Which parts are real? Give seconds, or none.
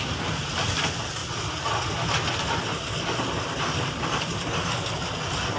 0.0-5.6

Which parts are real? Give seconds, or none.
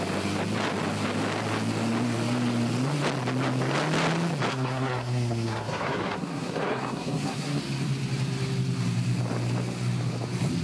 0.0-4.5; 7.6-10.6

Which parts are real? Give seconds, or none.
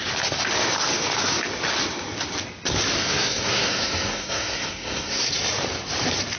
0.0-3.0; 5.3-6.4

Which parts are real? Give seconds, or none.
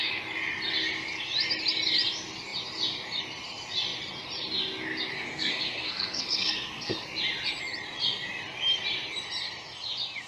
0.0-5.1; 7.1-10.3